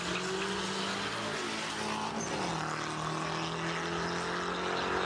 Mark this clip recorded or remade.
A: recorded